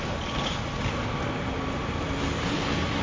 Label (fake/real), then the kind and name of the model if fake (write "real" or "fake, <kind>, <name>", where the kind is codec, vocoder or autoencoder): real